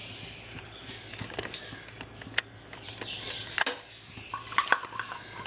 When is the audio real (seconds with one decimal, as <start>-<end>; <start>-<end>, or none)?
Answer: 0.0-5.5